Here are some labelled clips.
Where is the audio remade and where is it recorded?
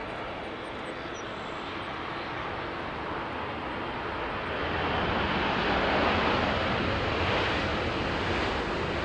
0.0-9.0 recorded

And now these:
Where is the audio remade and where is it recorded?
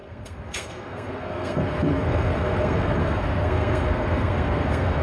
0.0-5.0 remade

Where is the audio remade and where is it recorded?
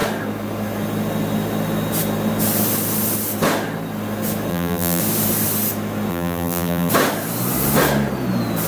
0.0-4.5 recorded; 4.5-5.0 remade; 5.0-6.1 recorded; 6.1-6.9 remade; 6.9-8.7 recorded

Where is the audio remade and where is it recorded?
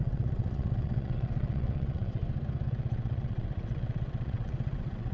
0.0-2.2 remade; 2.2-2.7 recorded; 2.7-5.1 remade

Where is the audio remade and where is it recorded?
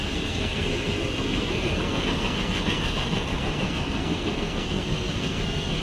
0.0-5.8 remade